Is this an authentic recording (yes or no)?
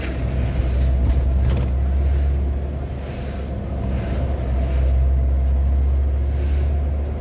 yes